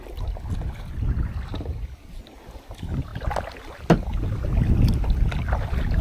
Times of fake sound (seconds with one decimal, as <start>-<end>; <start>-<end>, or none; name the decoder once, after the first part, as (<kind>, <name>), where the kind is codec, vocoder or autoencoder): none